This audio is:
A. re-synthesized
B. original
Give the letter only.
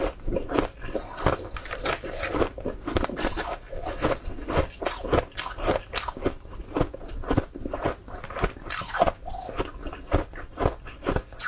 B